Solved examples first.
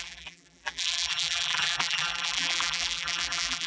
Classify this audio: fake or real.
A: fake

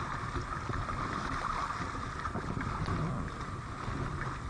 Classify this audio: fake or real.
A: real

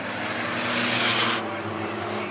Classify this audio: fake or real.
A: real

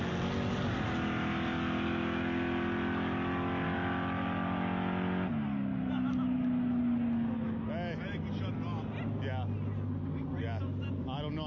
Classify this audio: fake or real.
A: real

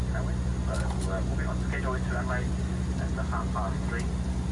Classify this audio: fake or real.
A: real